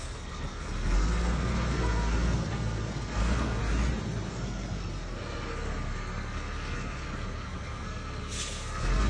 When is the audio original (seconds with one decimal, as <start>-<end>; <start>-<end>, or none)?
3.6-4.3